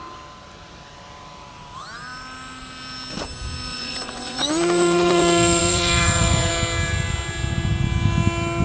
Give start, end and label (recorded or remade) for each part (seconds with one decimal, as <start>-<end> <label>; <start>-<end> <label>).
0.0-3.7 recorded; 3.7-6.5 remade; 6.5-8.6 recorded